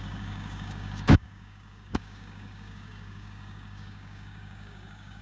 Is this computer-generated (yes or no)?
yes